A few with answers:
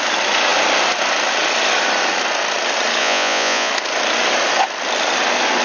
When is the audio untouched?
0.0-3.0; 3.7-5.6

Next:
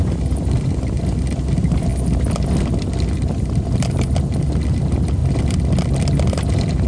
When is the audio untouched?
1.9-4.7; 5.2-6.3

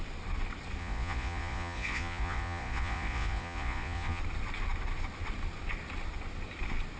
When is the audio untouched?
0.0-0.8; 4.2-7.0

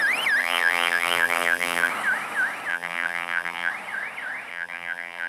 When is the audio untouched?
0.0-0.4; 1.9-2.7; 3.7-4.5

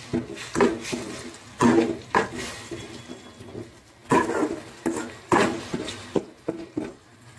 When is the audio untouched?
0.0-7.4

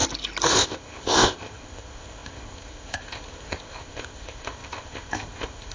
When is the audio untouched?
0.0-0.5

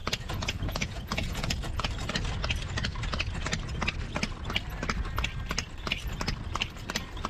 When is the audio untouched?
1.9-7.3

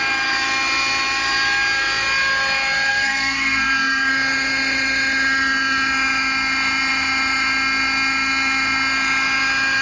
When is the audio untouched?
0.0-2.9; 4.1-9.8